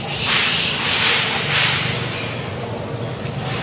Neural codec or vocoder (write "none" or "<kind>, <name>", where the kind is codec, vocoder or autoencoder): none